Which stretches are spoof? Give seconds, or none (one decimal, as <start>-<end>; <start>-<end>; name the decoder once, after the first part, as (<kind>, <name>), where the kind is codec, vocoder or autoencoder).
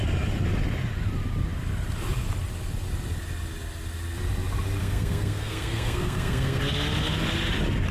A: 4.8-6.6 (codec, SNAC)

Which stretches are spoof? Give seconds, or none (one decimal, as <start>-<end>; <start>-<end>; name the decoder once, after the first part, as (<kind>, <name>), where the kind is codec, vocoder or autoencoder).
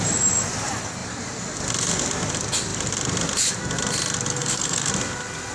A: 4.3-4.9 (codec, SNAC)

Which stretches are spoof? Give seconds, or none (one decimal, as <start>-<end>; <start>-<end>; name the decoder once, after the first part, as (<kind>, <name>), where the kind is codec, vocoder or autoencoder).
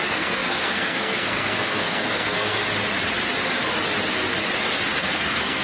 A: 0.0-2.6 (codec, SNAC); 5.0-5.6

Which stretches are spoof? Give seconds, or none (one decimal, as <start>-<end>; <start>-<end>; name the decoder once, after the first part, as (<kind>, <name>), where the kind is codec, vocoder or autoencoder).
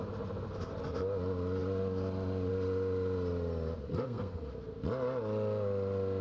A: 3.9-4.5 (codec, SNAC)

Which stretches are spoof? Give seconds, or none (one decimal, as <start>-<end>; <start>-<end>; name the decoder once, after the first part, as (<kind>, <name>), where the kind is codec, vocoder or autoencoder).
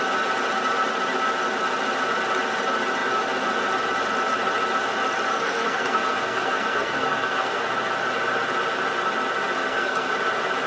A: 5.3-7.7 (codec, SNAC); 9.6-10.1